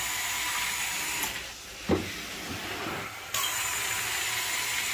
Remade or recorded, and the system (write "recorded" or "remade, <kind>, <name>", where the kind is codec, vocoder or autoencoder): recorded